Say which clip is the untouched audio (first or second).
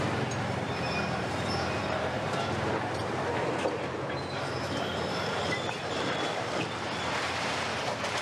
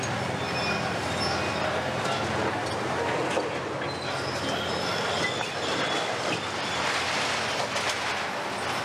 second